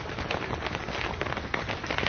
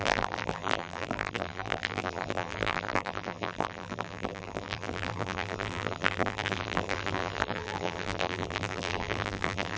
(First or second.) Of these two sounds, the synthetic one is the second